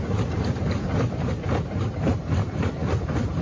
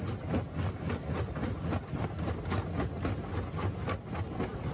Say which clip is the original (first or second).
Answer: second